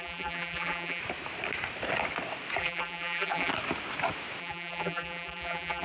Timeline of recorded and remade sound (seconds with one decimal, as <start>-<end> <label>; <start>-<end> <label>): 0.0-1.0 remade; 1.0-2.6 recorded; 2.6-3.5 remade; 3.5-4.4 recorded; 4.4-5.8 remade